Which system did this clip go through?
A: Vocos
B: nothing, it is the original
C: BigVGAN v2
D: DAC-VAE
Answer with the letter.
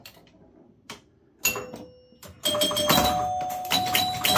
B